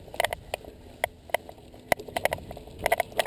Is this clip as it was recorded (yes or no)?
yes